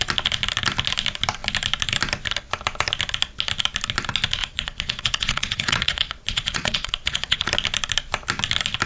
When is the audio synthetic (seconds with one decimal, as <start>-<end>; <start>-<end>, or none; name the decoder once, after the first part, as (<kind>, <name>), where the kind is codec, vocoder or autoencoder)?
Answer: 4.4-7.5 (vocoder, Vocos)